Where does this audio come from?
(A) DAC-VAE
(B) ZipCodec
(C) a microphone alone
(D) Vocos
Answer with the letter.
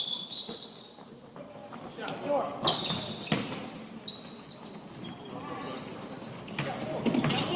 C